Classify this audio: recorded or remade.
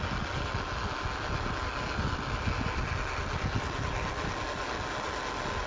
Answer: recorded